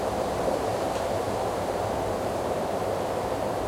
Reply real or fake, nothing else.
fake